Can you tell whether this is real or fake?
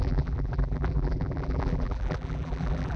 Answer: fake